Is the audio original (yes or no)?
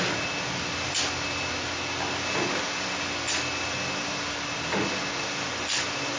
yes